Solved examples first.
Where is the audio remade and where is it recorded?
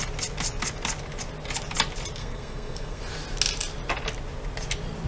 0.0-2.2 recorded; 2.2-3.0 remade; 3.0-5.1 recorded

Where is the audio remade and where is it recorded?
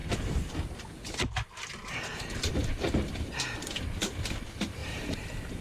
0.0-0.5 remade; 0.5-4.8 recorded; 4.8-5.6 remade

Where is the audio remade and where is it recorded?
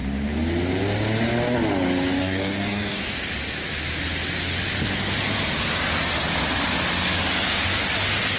0.0-2.2 recorded; 2.2-3.0 remade; 3.0-8.4 recorded